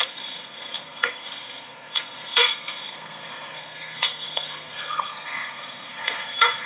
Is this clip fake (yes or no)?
yes